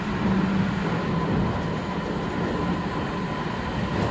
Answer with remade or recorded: recorded